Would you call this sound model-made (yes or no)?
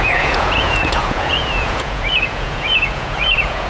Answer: yes